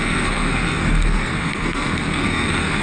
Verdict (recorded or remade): remade